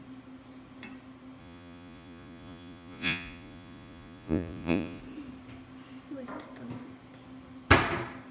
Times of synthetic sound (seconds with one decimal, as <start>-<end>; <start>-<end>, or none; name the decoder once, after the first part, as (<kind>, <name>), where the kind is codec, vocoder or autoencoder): 1.4-5.0 (vocoder, Vocos)